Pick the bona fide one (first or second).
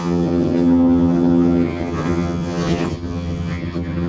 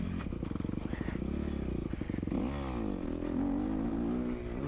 second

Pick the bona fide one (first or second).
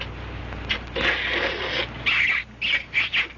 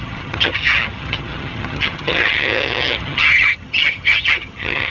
first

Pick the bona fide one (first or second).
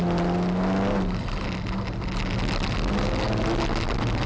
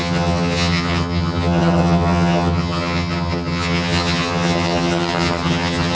first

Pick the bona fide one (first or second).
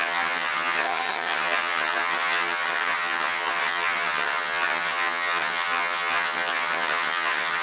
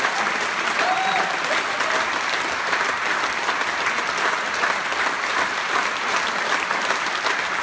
second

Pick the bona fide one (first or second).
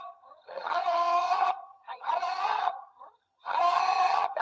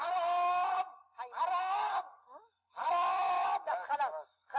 second